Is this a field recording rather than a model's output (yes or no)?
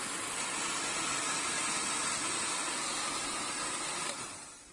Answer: yes